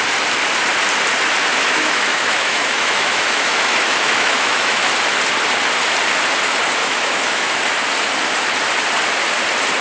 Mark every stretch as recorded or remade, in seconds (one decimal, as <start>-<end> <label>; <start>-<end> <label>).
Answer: 0.0-1.5 recorded; 1.5-4.9 remade; 4.9-6.8 recorded; 6.8-7.6 remade; 7.6-9.8 recorded